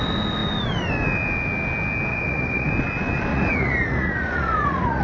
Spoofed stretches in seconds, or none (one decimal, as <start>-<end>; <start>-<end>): 2.1-2.7; 3.3-5.0